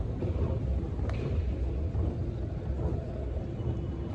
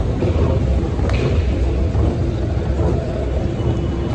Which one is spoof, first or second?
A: first